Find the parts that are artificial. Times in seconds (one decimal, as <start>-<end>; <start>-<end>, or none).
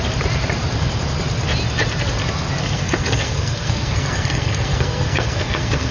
2.6-5.9